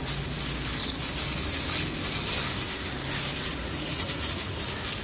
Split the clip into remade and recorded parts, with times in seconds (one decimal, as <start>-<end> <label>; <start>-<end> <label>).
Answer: 0.0-3.5 recorded; 3.5-4.6 remade; 4.6-5.0 recorded